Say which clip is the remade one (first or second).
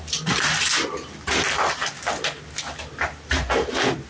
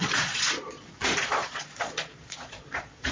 second